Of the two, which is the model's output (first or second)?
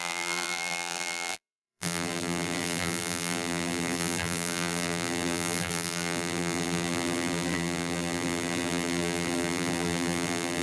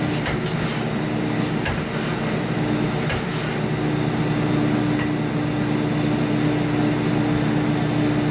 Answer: first